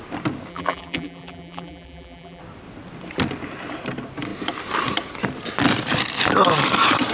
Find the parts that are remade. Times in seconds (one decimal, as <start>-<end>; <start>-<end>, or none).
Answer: 0.5-2.4